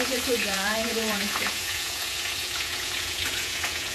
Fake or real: fake